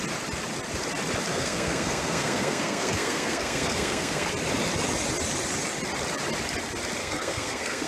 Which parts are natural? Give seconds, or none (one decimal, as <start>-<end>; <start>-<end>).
0.0-1.3; 4.3-7.0